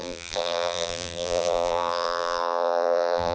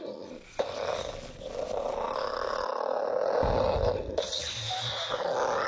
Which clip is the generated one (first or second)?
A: first